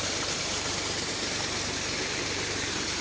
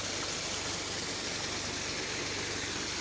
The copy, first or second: first